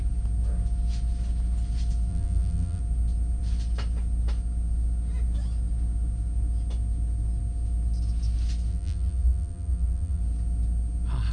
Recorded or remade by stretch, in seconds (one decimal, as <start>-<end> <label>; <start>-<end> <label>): 0.0-2.1 recorded; 2.1-2.8 remade; 2.8-8.7 recorded; 8.7-10.2 remade; 10.2-11.3 recorded